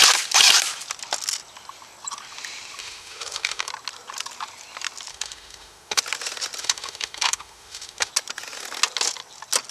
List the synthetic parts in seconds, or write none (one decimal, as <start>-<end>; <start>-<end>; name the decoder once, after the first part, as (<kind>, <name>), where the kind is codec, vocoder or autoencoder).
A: 2.8-3.7 (autoencoder, DAC-VAE); 5.1-6.0; 6.6-8.1